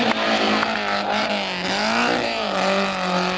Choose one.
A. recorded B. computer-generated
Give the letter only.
A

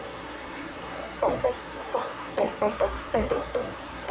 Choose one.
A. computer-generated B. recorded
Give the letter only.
A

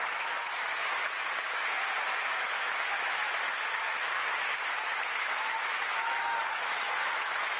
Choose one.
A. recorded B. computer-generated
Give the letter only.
B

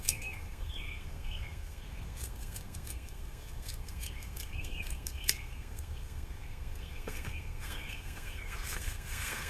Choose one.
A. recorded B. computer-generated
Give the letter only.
B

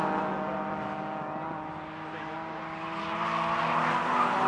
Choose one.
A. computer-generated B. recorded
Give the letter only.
B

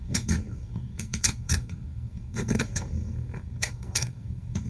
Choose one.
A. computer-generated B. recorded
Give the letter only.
A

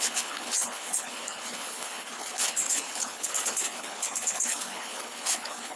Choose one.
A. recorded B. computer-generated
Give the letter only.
B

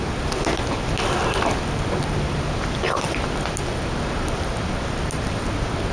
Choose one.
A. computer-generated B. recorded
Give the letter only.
B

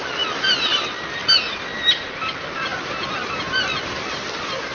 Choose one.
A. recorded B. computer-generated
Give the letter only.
A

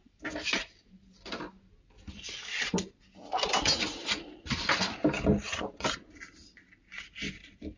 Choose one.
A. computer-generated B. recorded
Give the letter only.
B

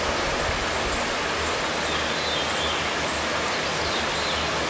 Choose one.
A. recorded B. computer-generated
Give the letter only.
A